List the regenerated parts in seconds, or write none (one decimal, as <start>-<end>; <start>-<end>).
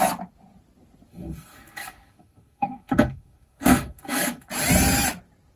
1.1-4.5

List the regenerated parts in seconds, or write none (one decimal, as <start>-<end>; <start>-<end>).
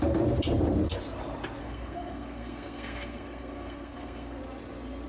1.6-4.4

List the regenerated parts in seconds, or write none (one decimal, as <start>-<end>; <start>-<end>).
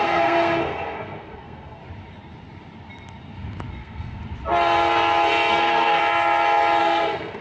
0.0-1.8; 3.7-4.2; 5.5-6.0; 6.8-7.4